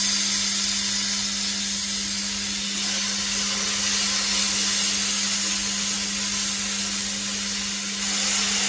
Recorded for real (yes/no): yes